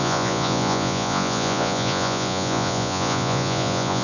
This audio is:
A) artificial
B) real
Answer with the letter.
A